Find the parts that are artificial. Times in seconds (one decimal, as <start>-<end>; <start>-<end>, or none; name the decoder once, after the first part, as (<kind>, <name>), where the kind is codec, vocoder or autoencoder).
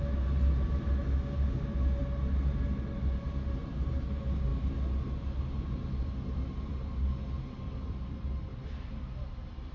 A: none